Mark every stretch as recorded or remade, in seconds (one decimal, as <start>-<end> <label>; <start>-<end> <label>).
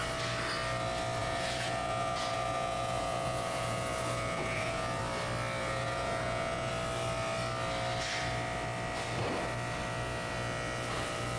0.0-1.2 recorded; 1.2-5.0 remade; 5.0-5.6 recorded; 5.6-6.7 remade; 6.7-11.4 recorded